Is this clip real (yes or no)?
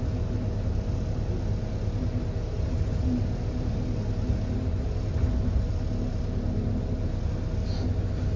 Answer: yes